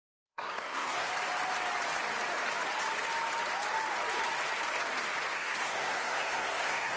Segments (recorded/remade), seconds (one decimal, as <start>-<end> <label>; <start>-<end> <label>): 0.0-1.1 remade; 1.1-5.3 recorded; 5.3-7.0 remade